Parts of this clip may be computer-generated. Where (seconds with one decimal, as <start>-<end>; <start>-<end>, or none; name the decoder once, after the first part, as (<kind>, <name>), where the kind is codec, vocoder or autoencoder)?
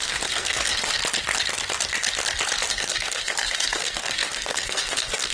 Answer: 0.0-1.0 (codec, SNAC); 2.7-5.3